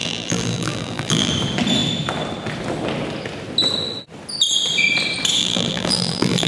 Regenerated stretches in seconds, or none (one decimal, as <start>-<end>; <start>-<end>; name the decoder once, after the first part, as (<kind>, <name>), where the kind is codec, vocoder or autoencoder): 0.0-1.3 (vocoder, BigVGAN v2); 5.4-6.5